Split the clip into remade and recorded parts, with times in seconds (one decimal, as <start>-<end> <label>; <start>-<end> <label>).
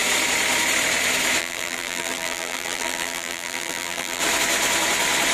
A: 0.0-1.4 recorded; 1.4-4.2 remade; 4.2-5.3 recorded